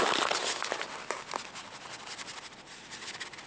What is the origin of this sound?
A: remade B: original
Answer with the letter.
B